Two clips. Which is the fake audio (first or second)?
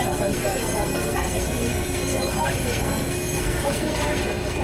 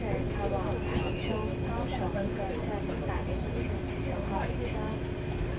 first